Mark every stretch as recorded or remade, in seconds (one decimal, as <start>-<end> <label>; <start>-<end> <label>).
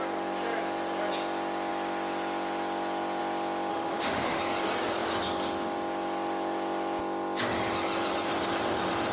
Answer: 0.0-3.7 recorded; 3.7-4.4 remade; 4.4-9.1 recorded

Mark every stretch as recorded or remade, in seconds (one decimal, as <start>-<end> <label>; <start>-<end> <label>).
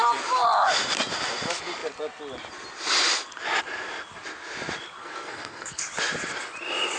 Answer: 0.0-5.0 recorded; 5.0-5.8 remade; 5.8-7.0 recorded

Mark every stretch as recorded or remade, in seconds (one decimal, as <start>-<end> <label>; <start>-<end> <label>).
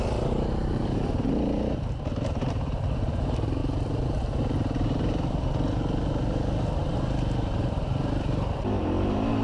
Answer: 0.0-9.4 recorded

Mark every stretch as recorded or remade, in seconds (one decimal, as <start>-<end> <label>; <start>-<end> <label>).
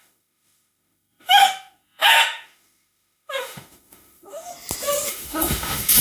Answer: 0.0-4.5 remade; 4.5-5.1 recorded; 5.1-6.0 remade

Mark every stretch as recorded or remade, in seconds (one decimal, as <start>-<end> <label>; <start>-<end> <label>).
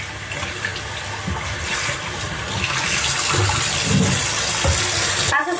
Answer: 0.0-5.6 recorded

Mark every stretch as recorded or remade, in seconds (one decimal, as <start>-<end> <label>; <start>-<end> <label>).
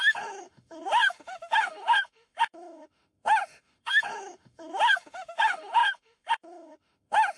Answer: 0.0-7.4 remade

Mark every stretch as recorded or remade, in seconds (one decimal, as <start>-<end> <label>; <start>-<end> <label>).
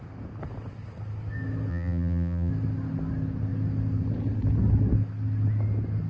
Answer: 0.0-1.7 recorded; 1.7-2.5 remade; 2.5-6.1 recorded